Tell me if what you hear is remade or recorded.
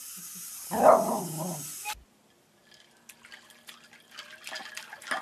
recorded